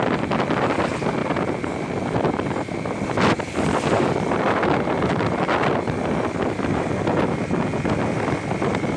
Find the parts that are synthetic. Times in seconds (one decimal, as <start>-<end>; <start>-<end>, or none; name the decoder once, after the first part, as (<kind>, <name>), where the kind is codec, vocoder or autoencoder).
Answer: none